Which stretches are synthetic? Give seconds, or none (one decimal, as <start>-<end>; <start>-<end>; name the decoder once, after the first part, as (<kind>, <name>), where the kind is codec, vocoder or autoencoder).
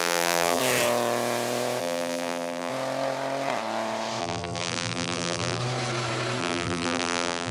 0.0-0.6 (vocoder, BigVGAN v2); 1.8-2.7; 4.2-5.6; 6.4-7.5